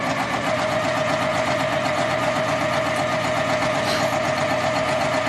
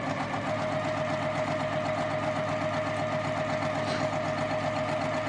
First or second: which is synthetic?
first